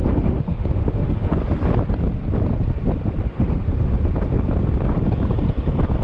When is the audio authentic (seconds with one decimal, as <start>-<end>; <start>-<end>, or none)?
1.3-3.3; 4.0-6.0